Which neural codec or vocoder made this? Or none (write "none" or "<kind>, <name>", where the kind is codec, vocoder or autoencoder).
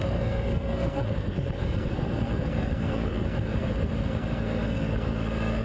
codec, SNAC